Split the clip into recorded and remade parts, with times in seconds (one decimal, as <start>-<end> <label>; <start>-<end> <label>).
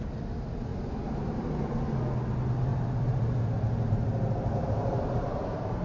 0.0-0.7 recorded; 0.7-2.0 remade; 2.0-2.7 recorded; 2.7-5.8 remade